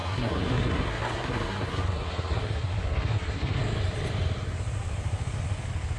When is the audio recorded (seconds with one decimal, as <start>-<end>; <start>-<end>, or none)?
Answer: 3.6-6.0